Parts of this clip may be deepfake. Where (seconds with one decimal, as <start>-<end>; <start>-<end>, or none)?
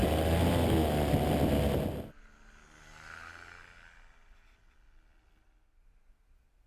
none